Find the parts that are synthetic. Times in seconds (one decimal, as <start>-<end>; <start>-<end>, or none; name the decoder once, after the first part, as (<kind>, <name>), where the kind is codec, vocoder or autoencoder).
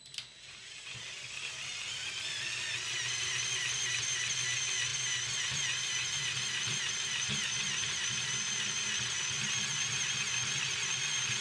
none